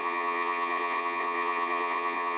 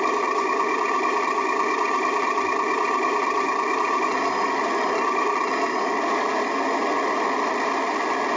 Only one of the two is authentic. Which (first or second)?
second